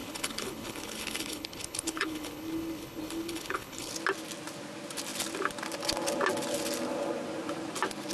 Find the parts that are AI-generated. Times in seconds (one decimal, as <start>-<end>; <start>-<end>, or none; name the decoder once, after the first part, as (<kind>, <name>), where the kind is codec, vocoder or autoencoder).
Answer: 0.0-3.9 (codec, HILCodec)